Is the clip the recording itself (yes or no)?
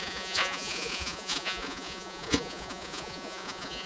no